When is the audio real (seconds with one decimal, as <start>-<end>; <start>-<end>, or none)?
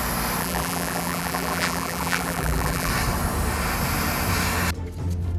0.0-0.4; 2.9-5.4